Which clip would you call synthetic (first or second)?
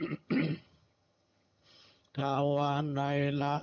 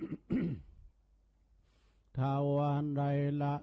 first